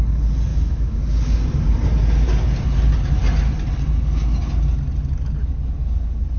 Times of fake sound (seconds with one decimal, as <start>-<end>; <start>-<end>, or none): 0.5-1.0

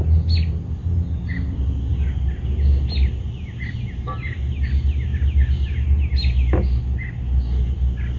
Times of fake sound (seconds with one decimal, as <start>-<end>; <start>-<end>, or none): none